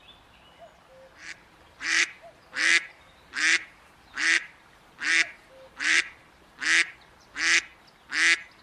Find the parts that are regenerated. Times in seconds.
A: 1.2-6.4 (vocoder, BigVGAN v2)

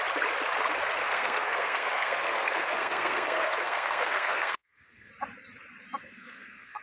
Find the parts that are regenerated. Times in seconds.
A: 1.0-5.1 (codec, SNAC); 6.0-6.8

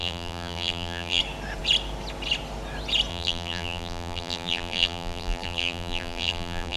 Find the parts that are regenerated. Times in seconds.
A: 0.0-1.2 (vocoder, BigVGAN v2); 3.1-6.8